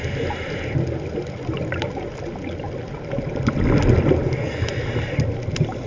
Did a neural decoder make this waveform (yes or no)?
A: no